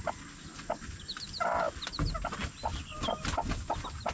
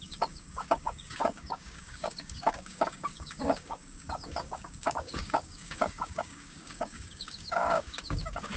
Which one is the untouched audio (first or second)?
first